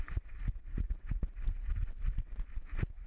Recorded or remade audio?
recorded